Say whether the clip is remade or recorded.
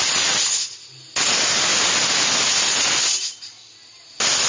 recorded